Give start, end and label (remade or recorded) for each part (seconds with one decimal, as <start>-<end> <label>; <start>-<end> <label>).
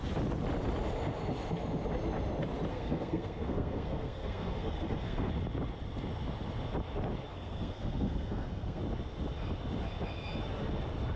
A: 0.0-2.7 recorded; 2.7-5.3 remade; 5.3-7.3 recorded; 7.3-8.8 remade; 8.8-11.2 recorded